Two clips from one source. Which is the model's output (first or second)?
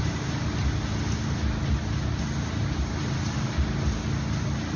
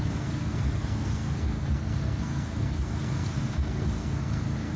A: second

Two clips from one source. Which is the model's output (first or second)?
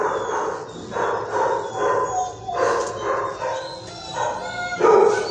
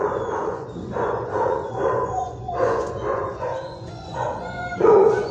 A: second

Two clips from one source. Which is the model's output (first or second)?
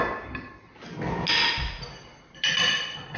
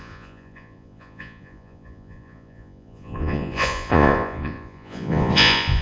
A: second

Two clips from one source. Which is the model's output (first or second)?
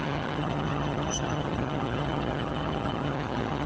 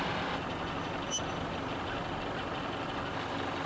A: first